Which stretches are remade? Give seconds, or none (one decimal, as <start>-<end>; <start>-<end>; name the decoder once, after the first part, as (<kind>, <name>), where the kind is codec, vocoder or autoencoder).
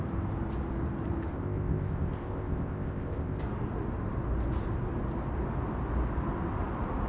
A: 1.3-3.4 (codec, ZipCodec)